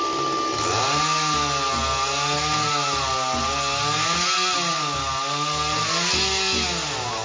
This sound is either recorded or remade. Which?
recorded